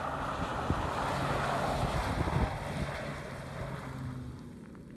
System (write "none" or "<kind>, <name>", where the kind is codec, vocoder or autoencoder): none